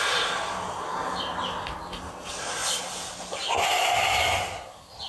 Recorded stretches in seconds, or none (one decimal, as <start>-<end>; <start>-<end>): 0.0-5.1